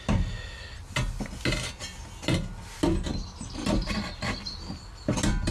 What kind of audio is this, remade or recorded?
recorded